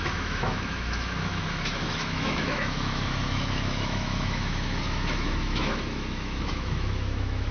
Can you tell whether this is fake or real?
fake